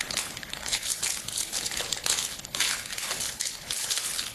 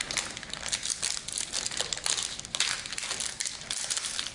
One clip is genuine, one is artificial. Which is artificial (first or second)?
first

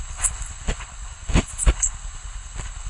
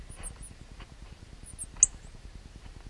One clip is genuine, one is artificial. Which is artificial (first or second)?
first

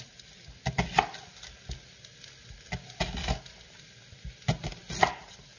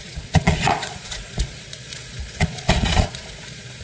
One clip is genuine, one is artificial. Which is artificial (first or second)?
second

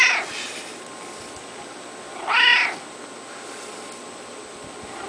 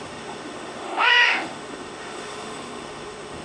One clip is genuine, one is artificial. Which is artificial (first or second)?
second